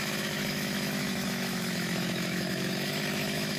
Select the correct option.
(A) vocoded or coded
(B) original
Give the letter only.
A